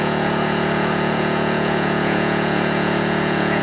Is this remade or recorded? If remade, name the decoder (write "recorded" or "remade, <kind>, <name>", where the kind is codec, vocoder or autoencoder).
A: remade, vocoder, Vocos